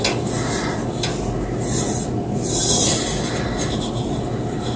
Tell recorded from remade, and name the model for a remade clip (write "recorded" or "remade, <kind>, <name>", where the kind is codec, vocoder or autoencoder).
recorded